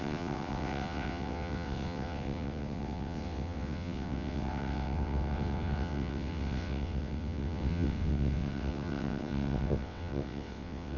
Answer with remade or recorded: remade